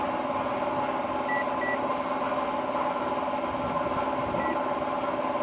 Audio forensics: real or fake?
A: real